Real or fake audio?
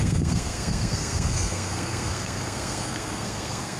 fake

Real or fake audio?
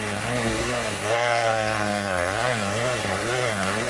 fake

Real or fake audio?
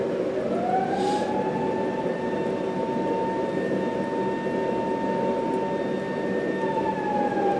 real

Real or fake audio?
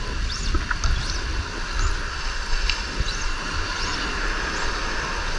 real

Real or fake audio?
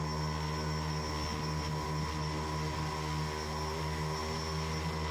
real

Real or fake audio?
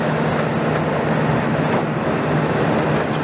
real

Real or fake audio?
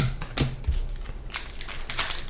real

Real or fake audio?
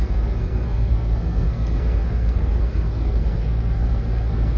fake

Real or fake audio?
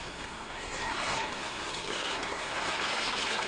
fake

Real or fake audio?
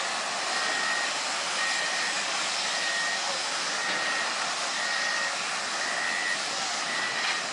real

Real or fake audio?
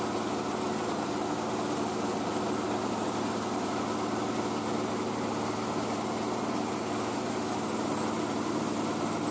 real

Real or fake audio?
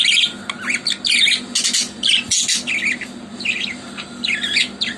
real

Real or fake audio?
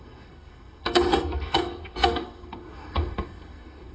fake